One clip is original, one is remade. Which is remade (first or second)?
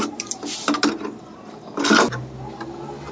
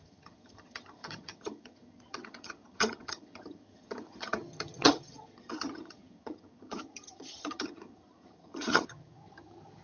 second